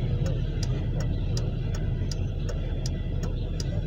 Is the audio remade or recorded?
recorded